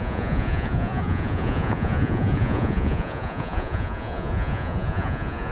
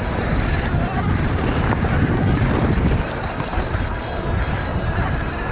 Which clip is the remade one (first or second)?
first